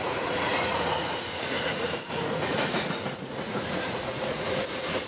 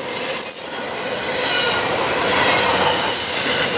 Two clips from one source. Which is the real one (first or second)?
second